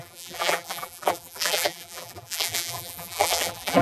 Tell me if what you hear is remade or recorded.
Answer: remade